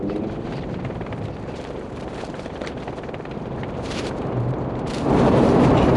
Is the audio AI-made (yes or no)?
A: yes